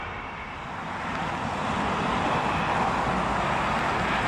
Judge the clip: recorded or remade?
recorded